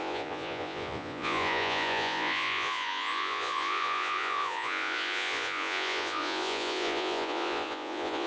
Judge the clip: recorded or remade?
remade